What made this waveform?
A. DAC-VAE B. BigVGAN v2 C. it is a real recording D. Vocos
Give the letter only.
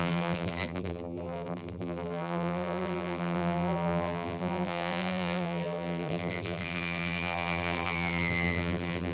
B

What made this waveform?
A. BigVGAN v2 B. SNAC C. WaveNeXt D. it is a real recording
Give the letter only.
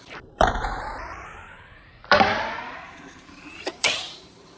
A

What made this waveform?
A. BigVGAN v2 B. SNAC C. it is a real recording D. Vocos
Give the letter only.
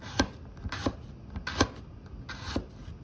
C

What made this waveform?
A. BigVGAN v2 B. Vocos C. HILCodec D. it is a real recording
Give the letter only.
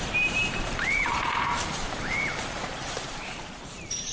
A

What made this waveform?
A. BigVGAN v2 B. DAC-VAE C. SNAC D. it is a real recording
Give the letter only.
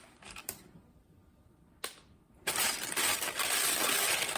A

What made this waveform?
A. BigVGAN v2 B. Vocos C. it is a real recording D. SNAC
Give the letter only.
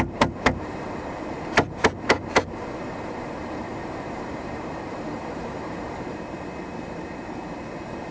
A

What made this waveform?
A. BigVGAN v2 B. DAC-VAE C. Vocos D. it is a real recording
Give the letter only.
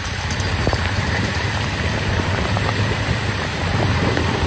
A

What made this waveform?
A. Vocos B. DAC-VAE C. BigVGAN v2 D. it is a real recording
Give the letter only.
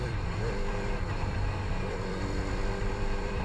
C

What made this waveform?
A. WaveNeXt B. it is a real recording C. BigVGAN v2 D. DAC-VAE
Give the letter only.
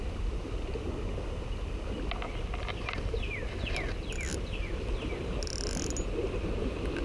B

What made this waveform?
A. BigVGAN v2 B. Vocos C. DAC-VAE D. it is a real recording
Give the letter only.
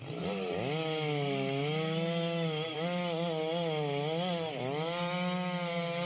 D